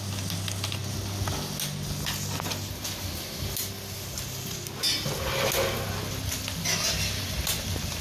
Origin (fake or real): real